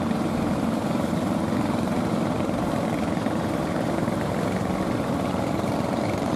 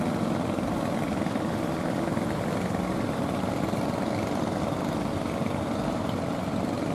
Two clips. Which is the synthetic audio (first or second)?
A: first